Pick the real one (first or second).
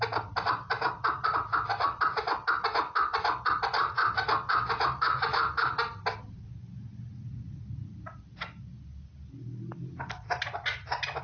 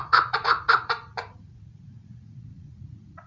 first